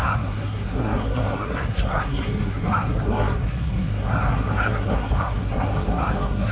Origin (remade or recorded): remade